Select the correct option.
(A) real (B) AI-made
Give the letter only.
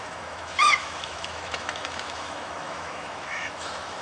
B